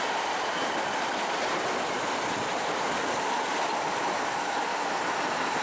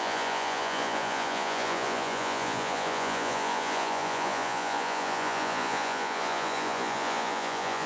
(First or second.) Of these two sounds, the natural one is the first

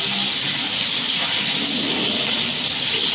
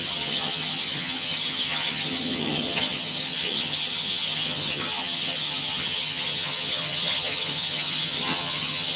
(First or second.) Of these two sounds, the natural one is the first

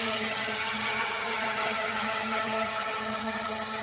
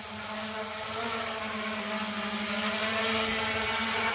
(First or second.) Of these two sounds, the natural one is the second